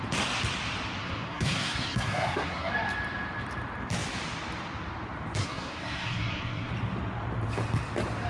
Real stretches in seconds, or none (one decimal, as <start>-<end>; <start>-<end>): 0.0-1.0; 2.7-5.4; 6.7-8.3